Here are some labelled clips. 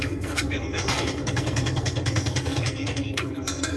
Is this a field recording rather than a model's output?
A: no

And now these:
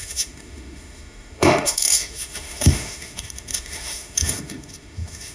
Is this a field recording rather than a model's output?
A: no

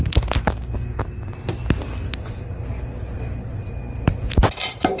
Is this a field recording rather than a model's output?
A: yes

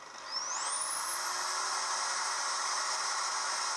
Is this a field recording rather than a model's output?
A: yes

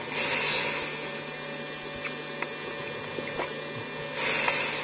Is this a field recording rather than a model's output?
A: yes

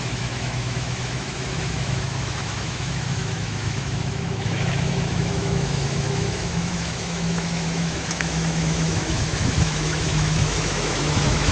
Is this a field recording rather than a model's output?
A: no